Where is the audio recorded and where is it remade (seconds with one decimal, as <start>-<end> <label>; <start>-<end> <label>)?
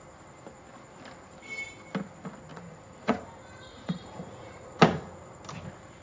0.0-2.5 recorded; 2.5-3.2 remade; 3.2-3.7 recorded; 3.7-4.8 remade; 4.8-6.0 recorded